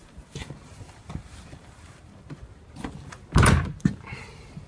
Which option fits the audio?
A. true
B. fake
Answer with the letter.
B